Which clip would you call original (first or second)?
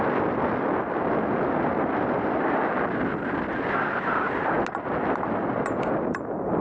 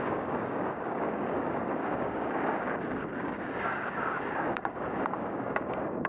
first